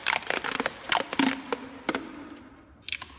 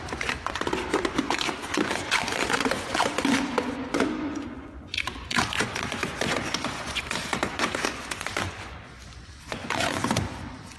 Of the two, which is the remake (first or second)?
second